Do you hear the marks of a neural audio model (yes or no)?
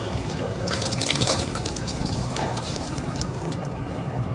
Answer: yes